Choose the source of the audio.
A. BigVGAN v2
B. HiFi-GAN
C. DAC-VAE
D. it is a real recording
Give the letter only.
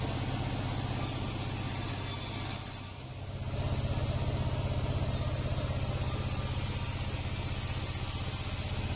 D